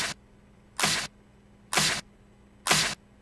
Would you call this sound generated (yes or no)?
no